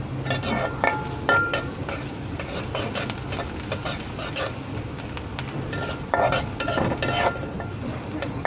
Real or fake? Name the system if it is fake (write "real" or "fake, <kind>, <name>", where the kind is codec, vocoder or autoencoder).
real